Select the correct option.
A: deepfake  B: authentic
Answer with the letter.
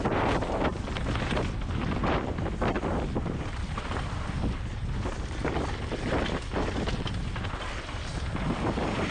B